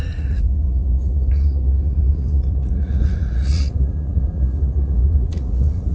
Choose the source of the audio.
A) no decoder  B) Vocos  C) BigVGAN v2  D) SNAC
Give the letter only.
B